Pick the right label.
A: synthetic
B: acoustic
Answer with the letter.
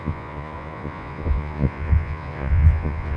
A